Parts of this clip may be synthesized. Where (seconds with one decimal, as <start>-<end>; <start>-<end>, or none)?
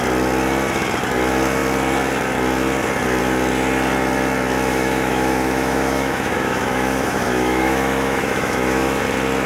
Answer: 4.7-9.0